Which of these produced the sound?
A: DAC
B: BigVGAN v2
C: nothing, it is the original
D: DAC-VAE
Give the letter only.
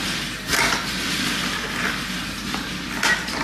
C